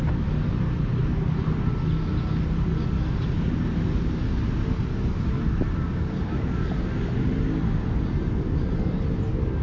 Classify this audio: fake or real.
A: real